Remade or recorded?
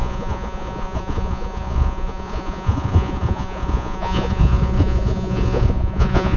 remade